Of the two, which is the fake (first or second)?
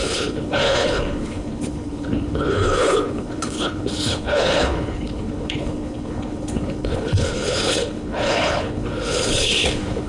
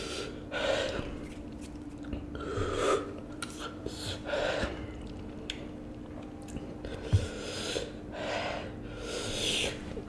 first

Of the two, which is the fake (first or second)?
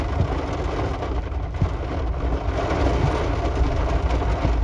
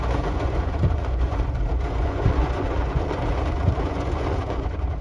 second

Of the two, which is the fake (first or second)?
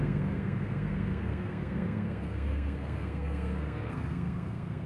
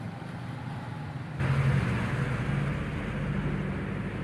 first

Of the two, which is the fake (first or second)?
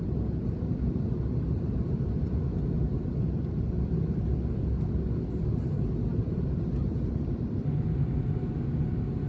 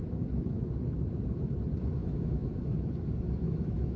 second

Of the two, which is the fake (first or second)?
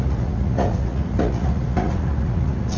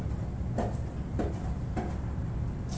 first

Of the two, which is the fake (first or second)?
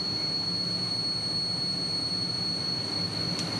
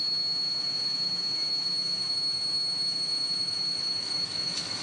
second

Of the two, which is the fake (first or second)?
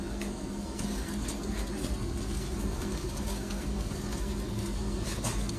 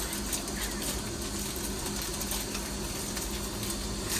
first